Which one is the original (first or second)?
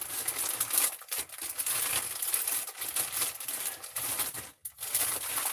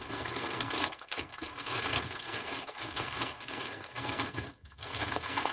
first